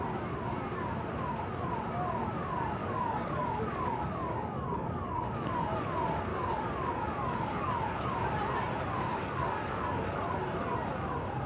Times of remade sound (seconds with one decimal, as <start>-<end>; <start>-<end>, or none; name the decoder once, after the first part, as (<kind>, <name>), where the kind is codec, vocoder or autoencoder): 2.8-5.6 (codec, DAC); 6.3-8.1; 9.1-10.0

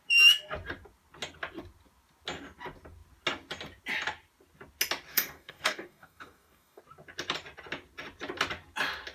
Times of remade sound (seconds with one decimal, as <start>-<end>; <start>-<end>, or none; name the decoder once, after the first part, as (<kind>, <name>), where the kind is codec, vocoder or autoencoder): 5.1-6.8 (codec, DAC)

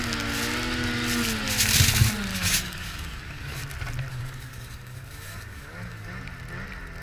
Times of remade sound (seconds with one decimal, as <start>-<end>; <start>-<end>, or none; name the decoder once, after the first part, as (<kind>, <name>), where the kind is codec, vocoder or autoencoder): 2.3-3.6 (codec, DAC); 4.1-6.1

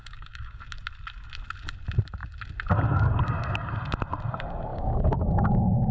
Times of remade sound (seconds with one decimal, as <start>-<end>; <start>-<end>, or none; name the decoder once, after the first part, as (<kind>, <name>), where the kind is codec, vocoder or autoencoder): 0.0-0.6 (codec, DAC); 4.7-5.9

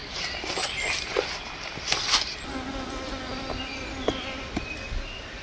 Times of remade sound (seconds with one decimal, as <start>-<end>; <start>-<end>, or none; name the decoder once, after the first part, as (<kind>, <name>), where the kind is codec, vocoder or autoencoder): none

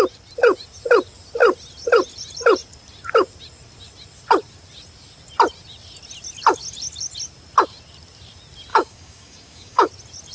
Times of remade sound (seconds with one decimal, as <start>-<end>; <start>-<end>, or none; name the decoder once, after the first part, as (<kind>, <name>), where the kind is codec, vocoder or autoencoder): 8.7-9.9 (codec, DAC)

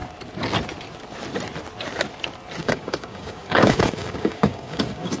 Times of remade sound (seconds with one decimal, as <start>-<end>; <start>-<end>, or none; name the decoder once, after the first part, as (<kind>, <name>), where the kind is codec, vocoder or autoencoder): 2.6-5.2 (codec, DAC)